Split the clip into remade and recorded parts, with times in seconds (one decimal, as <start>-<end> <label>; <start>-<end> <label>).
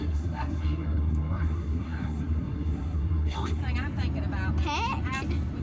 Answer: 0.0-3.6 remade; 3.6-5.6 recorded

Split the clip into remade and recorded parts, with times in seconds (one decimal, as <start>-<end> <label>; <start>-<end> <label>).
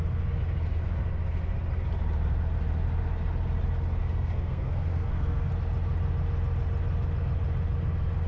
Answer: 0.0-4.0 recorded; 4.0-5.5 remade; 5.5-8.3 recorded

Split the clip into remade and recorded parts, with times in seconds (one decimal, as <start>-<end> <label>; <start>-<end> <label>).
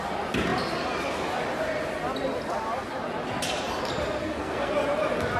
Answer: 0.0-4.2 recorded; 4.2-4.7 remade; 4.7-5.4 recorded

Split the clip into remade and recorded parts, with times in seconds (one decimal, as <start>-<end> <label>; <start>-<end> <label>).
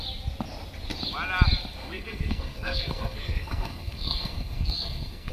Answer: 0.0-1.8 recorded; 1.8-5.3 remade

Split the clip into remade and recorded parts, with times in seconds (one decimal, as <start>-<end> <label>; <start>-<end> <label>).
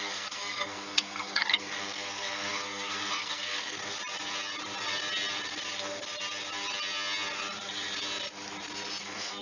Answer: 0.0-3.8 remade; 3.8-9.0 recorded; 9.0-9.4 remade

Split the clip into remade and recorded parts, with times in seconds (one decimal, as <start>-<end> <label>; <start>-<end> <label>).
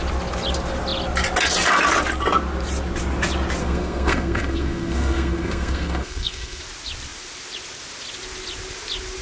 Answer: 0.0-3.6 recorded; 3.6-6.6 remade; 6.6-9.2 recorded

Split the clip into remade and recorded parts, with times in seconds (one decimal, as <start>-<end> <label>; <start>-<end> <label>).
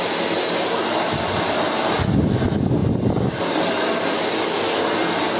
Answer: 0.0-5.4 recorded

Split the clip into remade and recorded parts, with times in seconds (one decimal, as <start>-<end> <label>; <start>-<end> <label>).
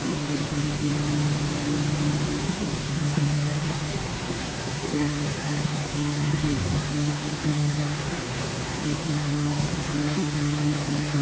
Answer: 0.0-0.9 remade; 0.9-2.4 recorded; 2.4-11.2 remade